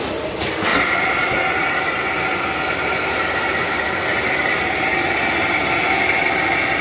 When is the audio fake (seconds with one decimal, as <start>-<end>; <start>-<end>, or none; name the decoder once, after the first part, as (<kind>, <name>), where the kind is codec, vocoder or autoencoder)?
none